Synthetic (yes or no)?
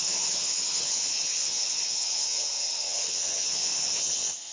yes